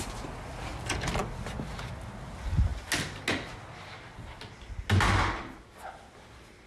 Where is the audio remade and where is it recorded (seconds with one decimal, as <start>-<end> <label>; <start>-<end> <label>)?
0.0-6.7 recorded